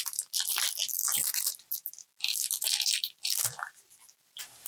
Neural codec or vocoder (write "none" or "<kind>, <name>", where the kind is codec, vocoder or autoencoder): none